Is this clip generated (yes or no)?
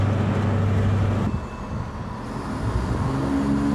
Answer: no